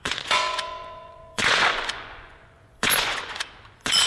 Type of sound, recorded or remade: remade